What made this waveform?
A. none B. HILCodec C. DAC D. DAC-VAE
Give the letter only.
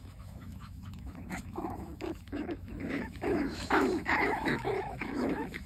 D